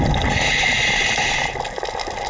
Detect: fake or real real